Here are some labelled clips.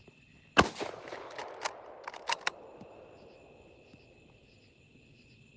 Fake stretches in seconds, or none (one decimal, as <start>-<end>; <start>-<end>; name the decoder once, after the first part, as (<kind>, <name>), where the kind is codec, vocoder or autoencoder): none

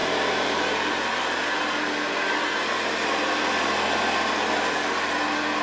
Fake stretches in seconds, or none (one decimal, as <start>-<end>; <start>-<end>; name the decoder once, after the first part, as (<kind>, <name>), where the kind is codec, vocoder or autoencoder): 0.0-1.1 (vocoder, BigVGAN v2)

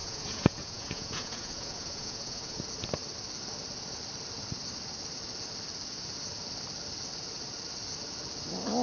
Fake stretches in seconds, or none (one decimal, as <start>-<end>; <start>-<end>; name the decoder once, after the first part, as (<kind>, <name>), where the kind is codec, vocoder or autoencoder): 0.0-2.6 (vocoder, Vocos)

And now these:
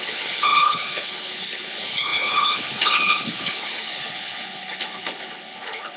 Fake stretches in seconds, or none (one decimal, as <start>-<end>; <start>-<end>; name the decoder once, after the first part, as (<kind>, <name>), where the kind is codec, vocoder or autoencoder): 0.0-6.0 (codec, HILCodec)